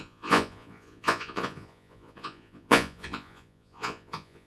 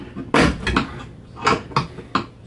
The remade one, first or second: first